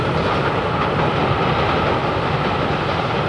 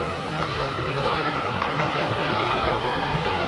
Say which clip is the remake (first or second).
second